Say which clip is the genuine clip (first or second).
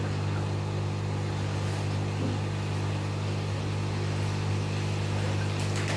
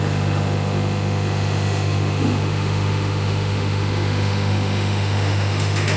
first